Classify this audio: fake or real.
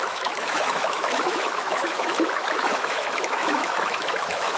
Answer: fake